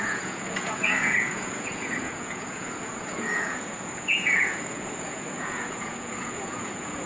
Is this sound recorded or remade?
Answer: remade